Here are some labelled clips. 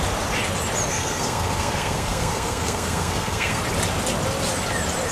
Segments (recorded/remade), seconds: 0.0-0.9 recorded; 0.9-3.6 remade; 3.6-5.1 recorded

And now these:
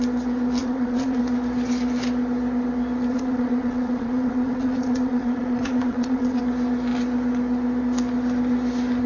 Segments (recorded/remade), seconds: 0.0-0.6 recorded; 0.6-1.2 remade; 1.2-3.1 recorded; 3.1-6.4 remade; 6.4-9.1 recorded